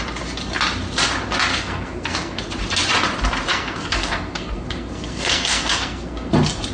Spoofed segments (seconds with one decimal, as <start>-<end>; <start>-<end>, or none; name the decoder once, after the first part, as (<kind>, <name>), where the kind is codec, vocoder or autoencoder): 1.5-2.4 (codec, SNAC); 3.5-6.3